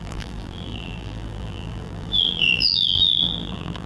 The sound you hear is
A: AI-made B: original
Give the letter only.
A